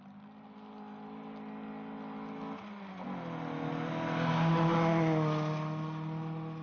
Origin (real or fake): real